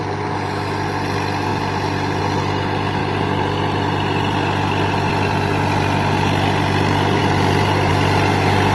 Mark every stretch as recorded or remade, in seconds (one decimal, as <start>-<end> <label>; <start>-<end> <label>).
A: 0.0-8.7 recorded